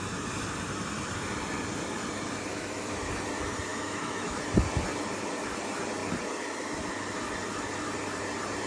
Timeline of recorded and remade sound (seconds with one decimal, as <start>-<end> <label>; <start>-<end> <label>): 0.0-2.5 recorded; 2.5-3.0 remade; 3.0-3.7 recorded; 3.7-4.4 remade; 4.4-8.7 recorded